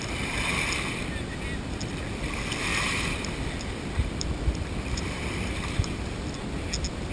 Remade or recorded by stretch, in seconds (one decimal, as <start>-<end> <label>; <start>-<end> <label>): 0.0-2.7 recorded; 2.7-5.8 remade; 5.8-7.1 recorded